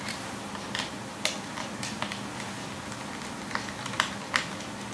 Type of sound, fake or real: real